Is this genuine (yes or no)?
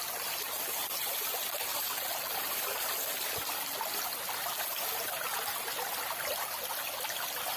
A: yes